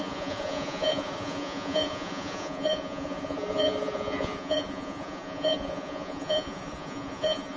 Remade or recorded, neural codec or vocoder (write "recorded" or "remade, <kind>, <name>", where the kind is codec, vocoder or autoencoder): remade, vocoder, Vocos